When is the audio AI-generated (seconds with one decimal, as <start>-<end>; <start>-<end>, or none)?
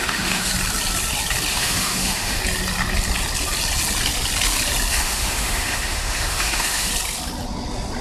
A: 0.0-0.5; 1.5-2.4; 4.9-6.9